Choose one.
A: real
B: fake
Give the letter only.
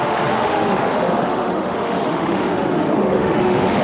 B